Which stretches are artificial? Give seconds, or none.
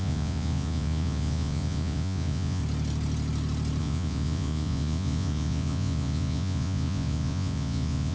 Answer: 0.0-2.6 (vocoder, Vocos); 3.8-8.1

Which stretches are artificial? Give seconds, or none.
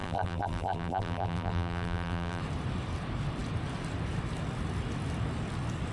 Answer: 0.0-2.4 (vocoder, BigVGAN v2)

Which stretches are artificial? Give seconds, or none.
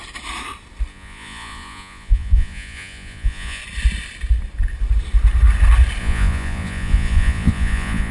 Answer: 0.9-3.6 (vocoder, Vocos); 6.0-8.1